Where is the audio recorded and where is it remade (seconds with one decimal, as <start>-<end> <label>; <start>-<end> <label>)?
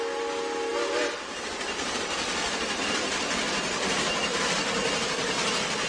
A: 0.0-5.9 recorded